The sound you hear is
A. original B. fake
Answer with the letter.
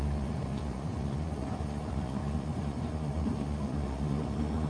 B